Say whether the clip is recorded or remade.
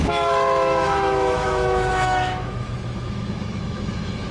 remade